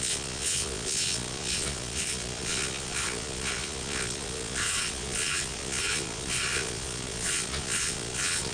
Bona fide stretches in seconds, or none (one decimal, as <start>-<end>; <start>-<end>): none